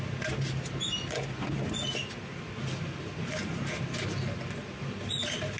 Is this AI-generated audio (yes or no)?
no